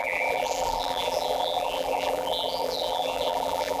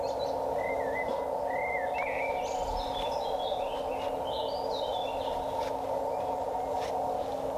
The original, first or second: second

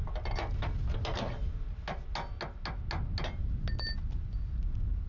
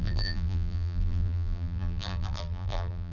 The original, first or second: first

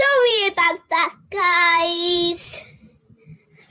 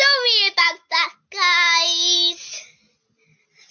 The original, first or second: second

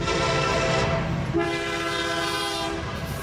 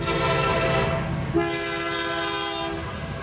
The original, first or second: second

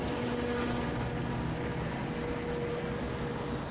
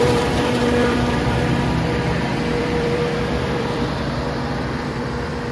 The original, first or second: first